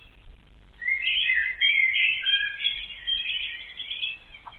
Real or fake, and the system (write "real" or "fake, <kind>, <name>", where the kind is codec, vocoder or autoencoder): fake, vocoder, BigVGAN v2